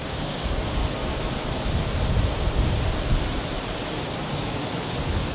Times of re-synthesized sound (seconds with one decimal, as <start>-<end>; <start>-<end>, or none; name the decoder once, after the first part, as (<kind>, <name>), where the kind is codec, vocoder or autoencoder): 0.0-0.8 (codec, DAC); 4.0-4.6

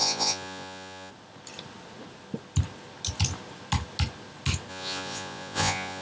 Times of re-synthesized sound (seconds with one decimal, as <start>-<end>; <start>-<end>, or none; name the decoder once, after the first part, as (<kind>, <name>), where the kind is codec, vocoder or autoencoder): 0.0-1.1 (vocoder, Vocos); 4.7-6.0

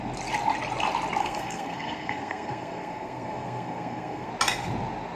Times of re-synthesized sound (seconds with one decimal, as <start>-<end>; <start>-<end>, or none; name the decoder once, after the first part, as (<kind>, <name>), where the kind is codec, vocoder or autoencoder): 1.2-4.3 (codec, SNAC)

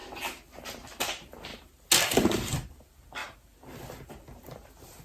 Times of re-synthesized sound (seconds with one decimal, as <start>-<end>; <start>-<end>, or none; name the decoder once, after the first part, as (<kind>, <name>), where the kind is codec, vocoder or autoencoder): 1.0-1.5 (vocoder, BigVGAN v2); 2.0-3.2; 4.1-5.0

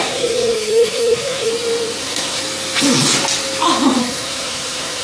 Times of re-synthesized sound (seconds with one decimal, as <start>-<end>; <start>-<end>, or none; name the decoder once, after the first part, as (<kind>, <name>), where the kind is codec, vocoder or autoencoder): 0.0-1.5 (codec, SNAC); 2.0-2.4; 4.0-5.0

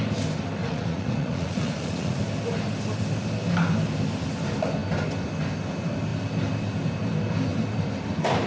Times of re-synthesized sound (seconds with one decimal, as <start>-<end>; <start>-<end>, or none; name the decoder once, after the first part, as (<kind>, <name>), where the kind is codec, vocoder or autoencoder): 0.6-2.2 (vocoder, Vocos)

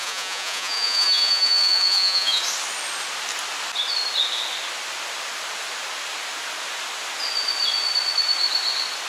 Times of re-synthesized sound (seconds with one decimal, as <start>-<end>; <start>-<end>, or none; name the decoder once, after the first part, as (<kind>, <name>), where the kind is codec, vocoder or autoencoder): 0.0-2.4 (vocoder, Vocos)